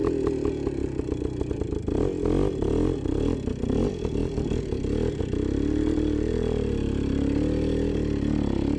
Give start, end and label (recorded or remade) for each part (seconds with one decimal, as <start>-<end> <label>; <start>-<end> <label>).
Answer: 0.0-8.8 recorded